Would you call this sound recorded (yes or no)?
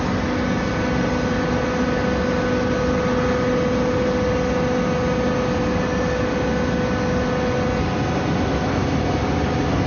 yes